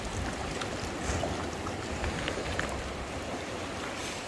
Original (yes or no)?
yes